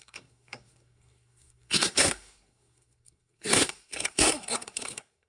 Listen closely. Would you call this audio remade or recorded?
remade